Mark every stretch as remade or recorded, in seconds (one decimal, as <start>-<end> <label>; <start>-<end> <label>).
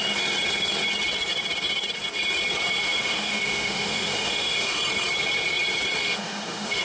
0.0-2.8 recorded; 2.8-4.8 remade; 4.8-6.0 recorded; 6.0-6.8 remade